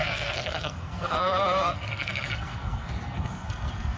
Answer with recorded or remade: remade